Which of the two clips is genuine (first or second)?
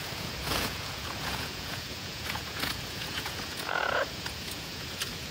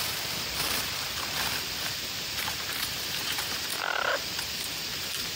second